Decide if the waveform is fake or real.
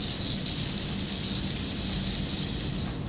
real